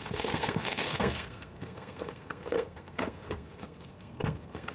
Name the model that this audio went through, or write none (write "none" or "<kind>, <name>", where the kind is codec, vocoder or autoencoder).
codec, SNAC